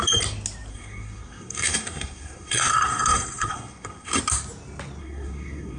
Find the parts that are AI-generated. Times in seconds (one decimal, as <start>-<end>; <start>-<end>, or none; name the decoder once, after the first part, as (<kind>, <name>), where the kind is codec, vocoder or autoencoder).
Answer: 0.7-4.2 (codec, SNAC); 5.0-5.8